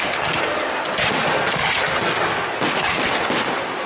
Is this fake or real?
real